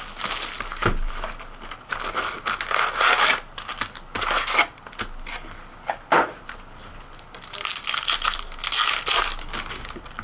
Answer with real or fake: real